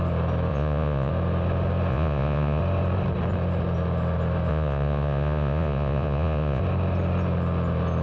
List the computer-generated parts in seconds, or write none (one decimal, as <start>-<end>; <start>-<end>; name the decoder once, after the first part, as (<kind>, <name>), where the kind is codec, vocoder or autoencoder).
0.5-1.1 (vocoder, Vocos); 1.9-2.6; 4.5-6.6